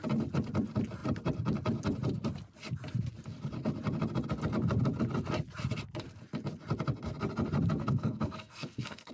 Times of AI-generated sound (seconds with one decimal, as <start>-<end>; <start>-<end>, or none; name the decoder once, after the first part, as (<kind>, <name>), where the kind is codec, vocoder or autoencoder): 7.8-9.1 (codec, SNAC)